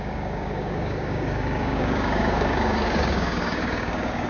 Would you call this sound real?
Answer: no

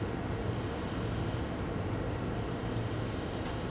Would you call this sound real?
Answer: yes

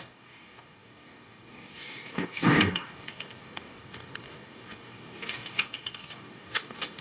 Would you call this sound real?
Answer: no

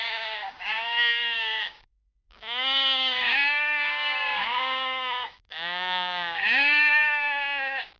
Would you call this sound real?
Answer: no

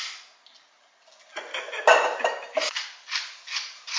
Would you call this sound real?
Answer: yes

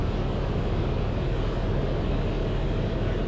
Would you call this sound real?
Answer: no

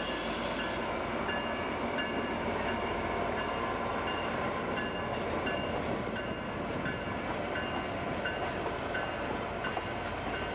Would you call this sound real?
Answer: yes